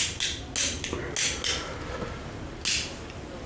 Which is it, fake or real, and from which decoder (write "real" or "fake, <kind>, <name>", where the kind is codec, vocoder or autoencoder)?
real